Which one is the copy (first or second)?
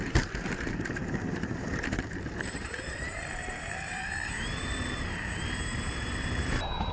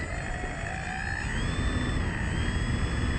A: first